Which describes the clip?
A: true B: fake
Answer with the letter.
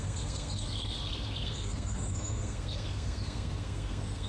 B